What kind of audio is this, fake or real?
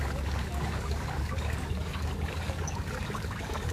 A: fake